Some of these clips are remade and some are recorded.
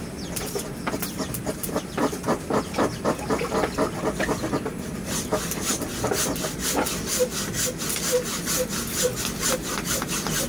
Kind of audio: recorded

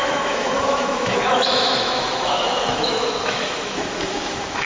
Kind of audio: remade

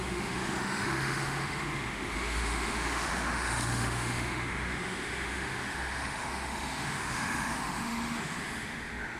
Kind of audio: remade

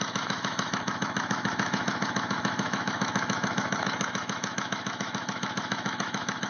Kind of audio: remade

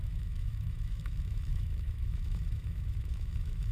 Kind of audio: remade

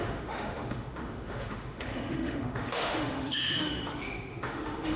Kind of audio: remade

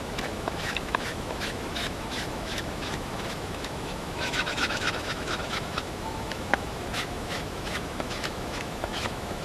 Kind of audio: remade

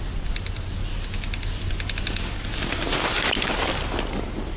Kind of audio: recorded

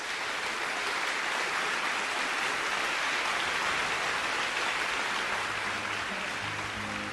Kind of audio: recorded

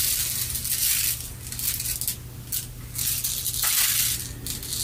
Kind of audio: recorded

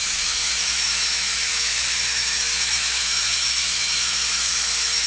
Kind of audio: remade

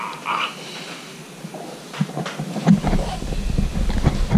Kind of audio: recorded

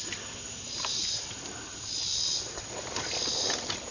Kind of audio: recorded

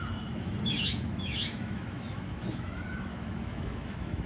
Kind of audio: remade